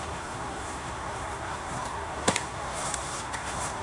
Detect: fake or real fake